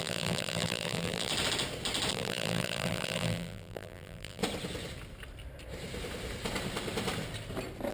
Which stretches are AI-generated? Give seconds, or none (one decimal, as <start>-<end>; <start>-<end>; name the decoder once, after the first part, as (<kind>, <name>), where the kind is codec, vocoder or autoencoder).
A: 0.0-1.3 (vocoder, BigVGAN v2); 2.1-4.4